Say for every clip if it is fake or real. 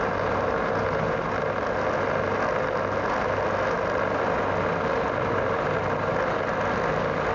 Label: real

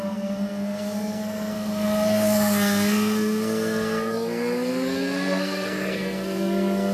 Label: fake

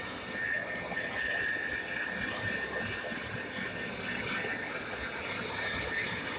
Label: real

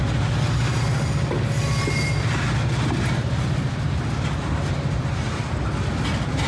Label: real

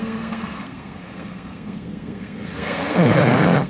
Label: fake